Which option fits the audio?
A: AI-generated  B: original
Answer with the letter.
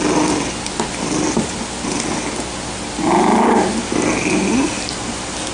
B